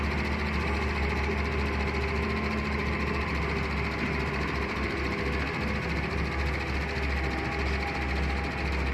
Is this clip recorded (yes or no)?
yes